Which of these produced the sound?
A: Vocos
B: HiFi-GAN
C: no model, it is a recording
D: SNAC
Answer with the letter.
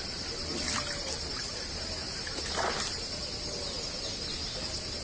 C